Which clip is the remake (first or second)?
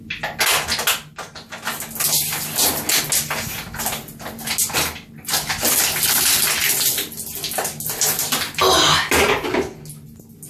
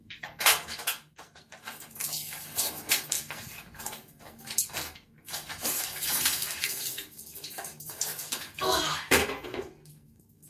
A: second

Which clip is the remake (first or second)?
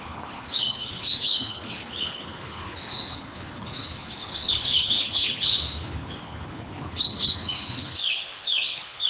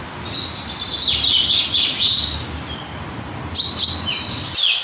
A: first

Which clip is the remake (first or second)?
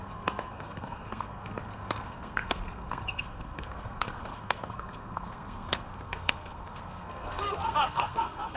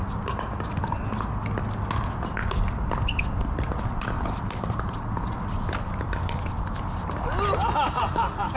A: first